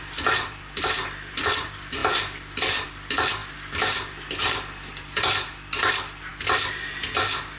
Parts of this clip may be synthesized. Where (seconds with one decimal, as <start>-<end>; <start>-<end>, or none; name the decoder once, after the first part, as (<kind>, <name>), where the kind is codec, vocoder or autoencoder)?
0.0-6.3 (vocoder, BigVGAN v2); 7.0-7.6

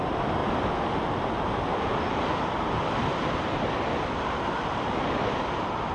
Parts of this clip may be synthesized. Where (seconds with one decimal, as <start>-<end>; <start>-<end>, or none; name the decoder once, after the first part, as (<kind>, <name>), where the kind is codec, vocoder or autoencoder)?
none

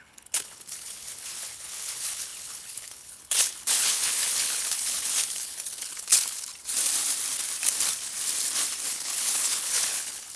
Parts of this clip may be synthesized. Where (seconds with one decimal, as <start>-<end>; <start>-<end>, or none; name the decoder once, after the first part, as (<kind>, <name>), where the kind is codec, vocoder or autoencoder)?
0.0-6.5 (codec, HILCodec); 8.9-10.4

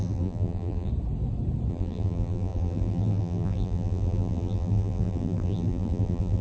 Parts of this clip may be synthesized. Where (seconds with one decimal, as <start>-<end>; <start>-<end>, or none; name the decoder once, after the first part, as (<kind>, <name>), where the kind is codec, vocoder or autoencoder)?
0.0-0.9 (vocoder, BigVGAN v2); 1.7-6.4

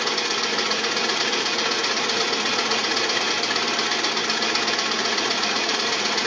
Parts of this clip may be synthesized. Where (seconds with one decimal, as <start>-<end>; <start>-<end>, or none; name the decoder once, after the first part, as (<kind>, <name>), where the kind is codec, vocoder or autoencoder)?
0.5-3.3 (vocoder, Vocos); 5.0-6.3